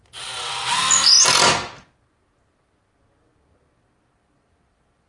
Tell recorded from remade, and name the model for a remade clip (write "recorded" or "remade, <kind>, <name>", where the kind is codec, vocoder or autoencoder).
recorded